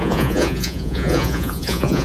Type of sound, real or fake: fake